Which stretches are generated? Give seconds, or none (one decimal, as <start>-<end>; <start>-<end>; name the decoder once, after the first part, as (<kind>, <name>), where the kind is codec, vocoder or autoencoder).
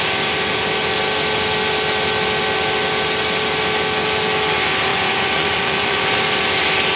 4.9-6.0 (vocoder, Vocos)